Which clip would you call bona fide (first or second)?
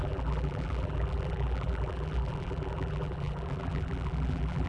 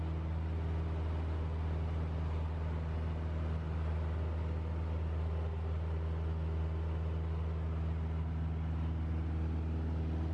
second